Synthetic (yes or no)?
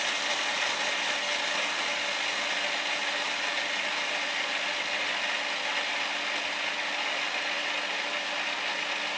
no